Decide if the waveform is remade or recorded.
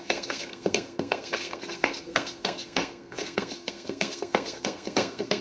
remade